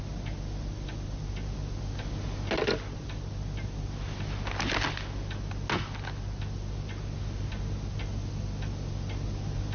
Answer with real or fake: real